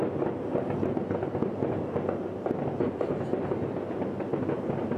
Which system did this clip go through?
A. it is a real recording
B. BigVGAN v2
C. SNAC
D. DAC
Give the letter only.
A